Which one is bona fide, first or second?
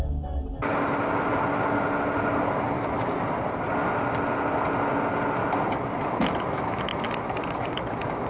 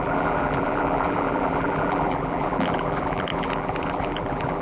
first